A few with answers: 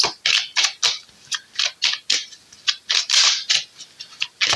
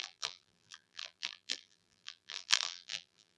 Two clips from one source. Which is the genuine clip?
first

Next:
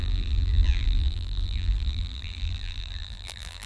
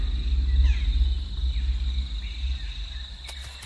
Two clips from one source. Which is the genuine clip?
second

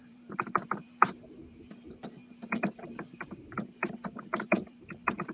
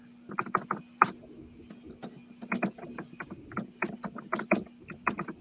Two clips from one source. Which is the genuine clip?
second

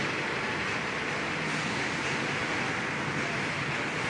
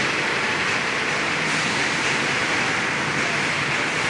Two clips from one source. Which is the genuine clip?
first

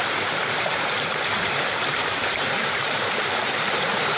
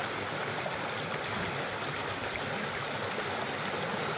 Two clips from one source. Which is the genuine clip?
second